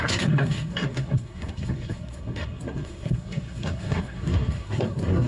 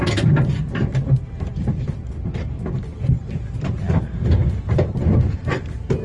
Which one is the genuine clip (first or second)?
second